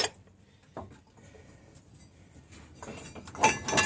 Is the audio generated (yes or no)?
no